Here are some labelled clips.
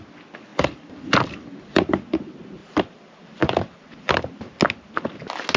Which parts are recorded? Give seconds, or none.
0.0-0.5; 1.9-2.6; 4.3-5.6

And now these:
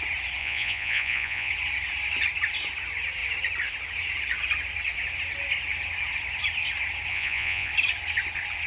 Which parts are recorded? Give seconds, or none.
0.0-0.4; 1.5-7.1; 7.7-8.7

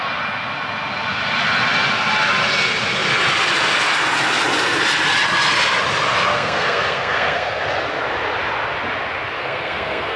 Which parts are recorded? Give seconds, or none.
0.0-6.3; 7.6-9.4

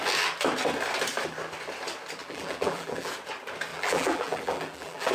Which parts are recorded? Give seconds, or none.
0.0-2.2; 3.1-3.7

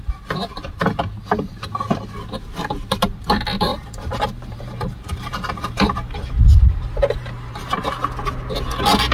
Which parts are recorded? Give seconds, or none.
0.0-3.7; 7.8-9.1